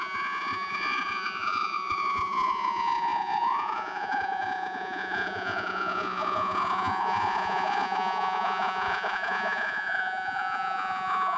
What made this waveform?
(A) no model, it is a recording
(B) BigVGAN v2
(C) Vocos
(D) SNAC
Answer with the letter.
C